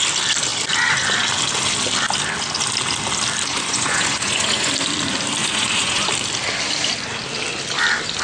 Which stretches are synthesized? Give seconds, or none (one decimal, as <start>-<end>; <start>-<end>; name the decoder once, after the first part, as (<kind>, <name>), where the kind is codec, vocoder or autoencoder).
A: 3.5-4.7 (vocoder, Vocos); 5.4-6.1